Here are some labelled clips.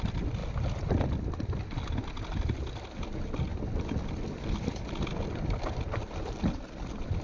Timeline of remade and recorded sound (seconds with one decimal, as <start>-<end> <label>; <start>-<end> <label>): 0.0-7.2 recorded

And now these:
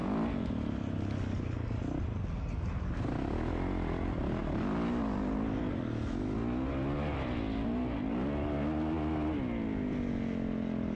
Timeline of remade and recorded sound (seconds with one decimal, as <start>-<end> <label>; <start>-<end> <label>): 0.0-10.9 recorded

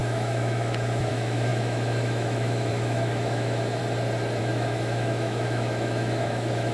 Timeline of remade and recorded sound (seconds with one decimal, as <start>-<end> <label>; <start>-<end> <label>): 0.0-3.8 remade; 3.8-4.4 recorded; 4.4-6.7 remade

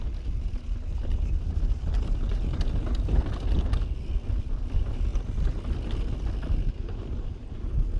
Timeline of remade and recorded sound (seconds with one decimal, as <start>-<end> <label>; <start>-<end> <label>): 0.0-8.0 recorded

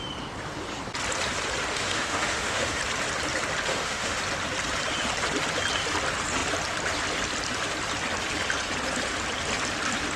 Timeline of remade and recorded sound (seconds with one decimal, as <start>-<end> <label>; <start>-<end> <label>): 0.0-1.7 recorded; 1.7-2.8 remade; 2.8-3.7 recorded; 3.7-4.2 remade; 4.2-10.2 recorded

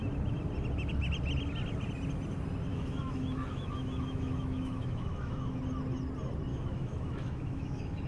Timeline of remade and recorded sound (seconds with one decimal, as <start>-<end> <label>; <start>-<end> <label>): 0.0-2.7 recorded; 2.7-5.6 remade; 5.6-6.5 recorded; 6.5-8.1 remade

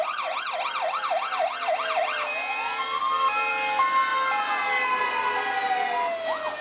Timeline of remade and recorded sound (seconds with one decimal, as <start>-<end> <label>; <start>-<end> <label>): 0.0-6.6 recorded

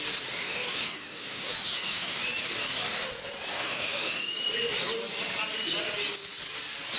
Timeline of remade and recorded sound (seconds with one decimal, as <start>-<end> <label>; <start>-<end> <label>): 0.0-0.4 recorded; 0.4-2.2 remade; 2.2-3.5 recorded; 3.5-4.3 remade; 4.3-7.0 recorded